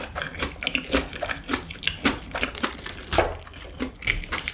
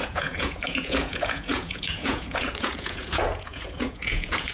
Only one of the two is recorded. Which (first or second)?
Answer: first